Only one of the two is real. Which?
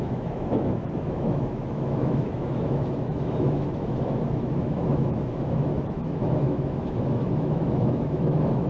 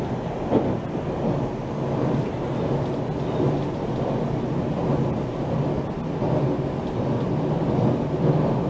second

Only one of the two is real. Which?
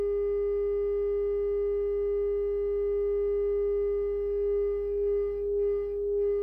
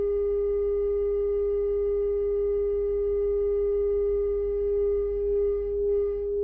first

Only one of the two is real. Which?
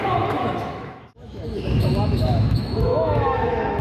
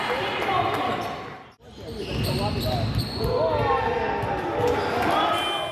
second